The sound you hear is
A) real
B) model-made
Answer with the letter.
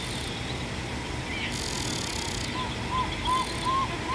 A